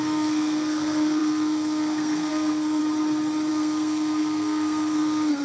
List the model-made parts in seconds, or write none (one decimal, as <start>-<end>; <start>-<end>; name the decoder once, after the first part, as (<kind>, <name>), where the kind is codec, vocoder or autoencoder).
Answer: 0.0-2.8 (codec, SNAC); 3.5-5.4